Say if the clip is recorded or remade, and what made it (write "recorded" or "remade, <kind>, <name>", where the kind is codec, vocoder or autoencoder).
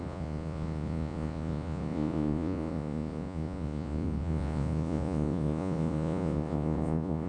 remade, vocoder, Vocos